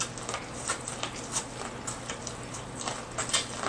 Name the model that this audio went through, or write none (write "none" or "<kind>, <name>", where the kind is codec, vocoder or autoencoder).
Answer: none